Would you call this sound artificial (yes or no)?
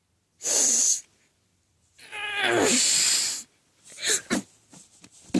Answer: no